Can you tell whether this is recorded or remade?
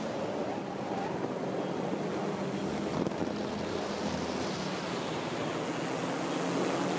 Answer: recorded